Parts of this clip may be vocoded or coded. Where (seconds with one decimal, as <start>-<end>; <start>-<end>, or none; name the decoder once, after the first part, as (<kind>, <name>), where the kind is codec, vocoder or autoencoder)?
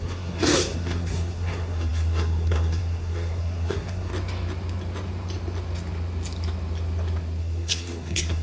0.0-4.1 (codec, SNAC); 7.4-8.4